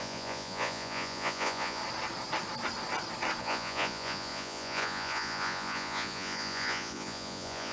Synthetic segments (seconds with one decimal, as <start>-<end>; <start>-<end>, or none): 0.0-1.8; 3.4-7.7